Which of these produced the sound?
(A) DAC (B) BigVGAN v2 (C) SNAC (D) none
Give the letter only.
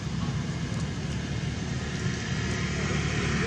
D